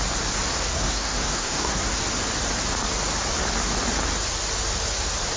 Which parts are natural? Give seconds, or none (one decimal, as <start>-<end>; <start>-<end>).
0.0-0.5; 2.0-5.4